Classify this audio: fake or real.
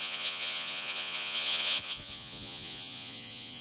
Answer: fake